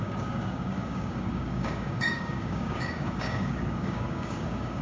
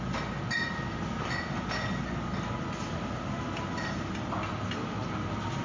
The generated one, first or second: first